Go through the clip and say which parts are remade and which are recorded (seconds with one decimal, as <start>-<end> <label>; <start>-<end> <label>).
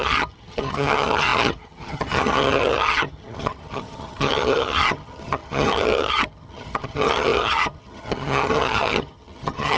0.0-9.8 remade